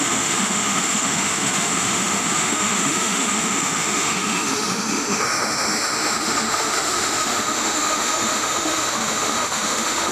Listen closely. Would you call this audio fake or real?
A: fake